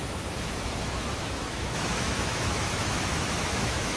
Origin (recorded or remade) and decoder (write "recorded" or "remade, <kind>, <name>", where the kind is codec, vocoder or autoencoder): remade, autoencoder, DAC-VAE